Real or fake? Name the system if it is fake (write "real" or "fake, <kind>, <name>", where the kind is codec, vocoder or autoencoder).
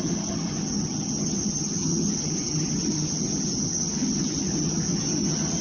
fake, vocoder, HiFi-GAN